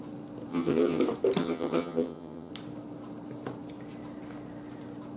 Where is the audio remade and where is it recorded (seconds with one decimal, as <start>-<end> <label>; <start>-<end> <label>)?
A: 0.0-0.5 recorded; 0.5-1.0 remade; 1.0-1.4 recorded; 1.4-2.5 remade; 2.5-5.2 recorded